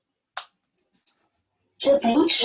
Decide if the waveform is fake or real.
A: real